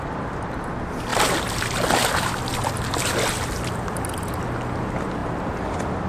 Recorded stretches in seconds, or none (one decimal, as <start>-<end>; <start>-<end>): 0.0-6.1